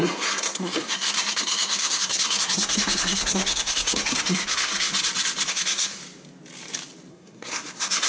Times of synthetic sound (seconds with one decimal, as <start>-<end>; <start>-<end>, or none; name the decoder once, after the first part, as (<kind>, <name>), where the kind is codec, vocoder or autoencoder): 0.0-4.9 (codec, SNAC); 5.5-6.0; 7.1-8.1